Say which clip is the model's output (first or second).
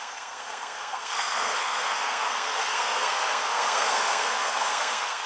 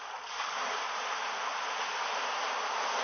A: first